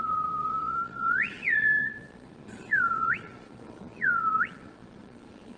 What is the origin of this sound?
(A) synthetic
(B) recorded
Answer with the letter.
A